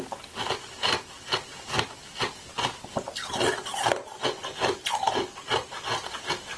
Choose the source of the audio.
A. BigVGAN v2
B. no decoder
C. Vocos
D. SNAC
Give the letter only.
B